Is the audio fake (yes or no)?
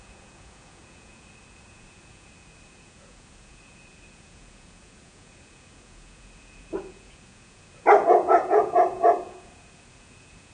yes